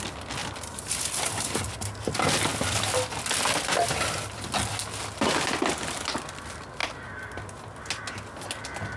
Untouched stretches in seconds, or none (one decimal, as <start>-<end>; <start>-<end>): 0.0-9.0